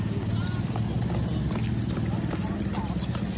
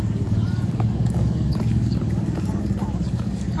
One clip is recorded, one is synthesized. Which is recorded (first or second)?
first